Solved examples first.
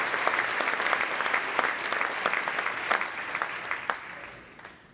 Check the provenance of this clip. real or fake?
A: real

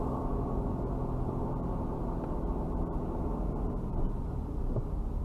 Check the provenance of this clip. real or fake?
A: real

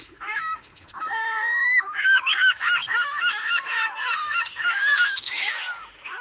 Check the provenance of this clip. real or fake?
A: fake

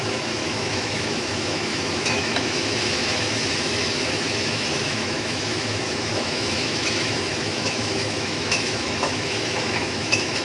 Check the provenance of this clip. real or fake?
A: fake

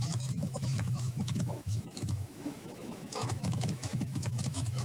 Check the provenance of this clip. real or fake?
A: fake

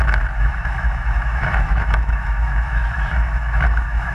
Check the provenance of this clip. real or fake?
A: fake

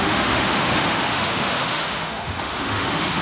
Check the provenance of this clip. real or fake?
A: fake